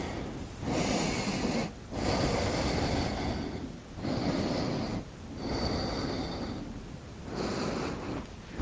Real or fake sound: real